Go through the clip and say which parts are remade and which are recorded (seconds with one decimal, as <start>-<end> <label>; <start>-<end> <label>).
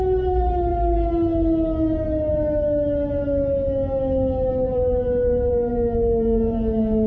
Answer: 0.0-0.7 remade; 0.7-4.5 recorded; 4.5-7.1 remade